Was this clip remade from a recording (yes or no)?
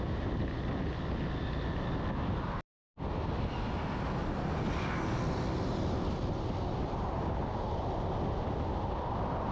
no